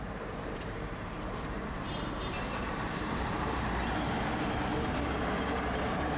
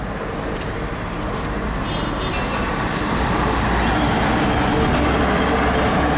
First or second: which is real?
second